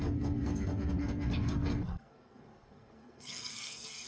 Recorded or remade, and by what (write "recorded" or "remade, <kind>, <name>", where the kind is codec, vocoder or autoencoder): remade, codec, SNAC